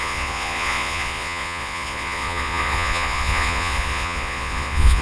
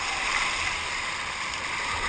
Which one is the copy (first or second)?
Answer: first